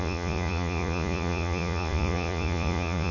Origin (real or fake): fake